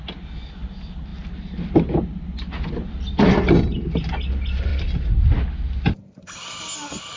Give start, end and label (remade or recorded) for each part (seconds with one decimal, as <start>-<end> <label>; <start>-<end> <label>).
0.0-7.2 recorded